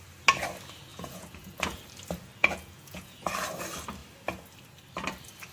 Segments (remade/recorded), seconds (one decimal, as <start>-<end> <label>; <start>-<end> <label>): 0.0-0.9 recorded; 0.9-1.8 remade; 1.8-2.4 recorded; 2.4-3.3 remade; 3.3-5.5 recorded